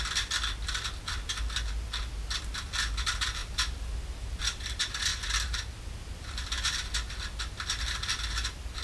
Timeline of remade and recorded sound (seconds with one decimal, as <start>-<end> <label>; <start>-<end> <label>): 0.0-3.4 recorded; 3.4-4.4 remade; 4.4-5.1 recorded; 5.1-5.7 remade; 5.7-8.8 recorded